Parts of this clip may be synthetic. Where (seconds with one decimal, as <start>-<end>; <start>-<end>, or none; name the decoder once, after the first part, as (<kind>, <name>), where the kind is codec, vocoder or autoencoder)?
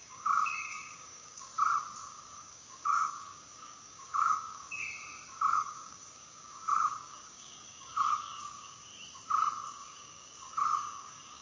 0.0-1.5 (codec, DAC); 2.1-4.8; 5.4-8.9; 9.7-11.4